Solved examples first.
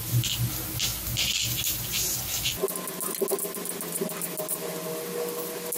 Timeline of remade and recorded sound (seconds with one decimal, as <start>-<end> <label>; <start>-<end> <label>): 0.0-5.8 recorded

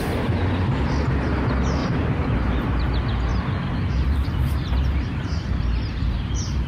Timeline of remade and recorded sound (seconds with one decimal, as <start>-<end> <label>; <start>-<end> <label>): 0.0-1.8 recorded; 1.8-2.6 remade; 2.6-3.3 recorded; 3.3-4.5 remade; 4.5-5.1 recorded; 5.1-6.7 remade

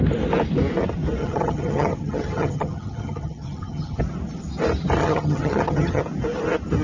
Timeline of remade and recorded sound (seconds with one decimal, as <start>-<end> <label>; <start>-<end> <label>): 0.0-1.2 recorded; 1.2-4.0 remade; 4.0-5.0 recorded; 5.0-6.0 remade; 6.0-6.8 recorded